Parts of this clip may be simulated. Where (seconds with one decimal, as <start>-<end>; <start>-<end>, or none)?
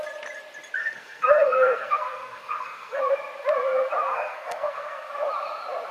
0.8-3.0; 4.1-5.1